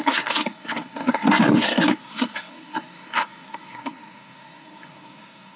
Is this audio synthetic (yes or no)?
yes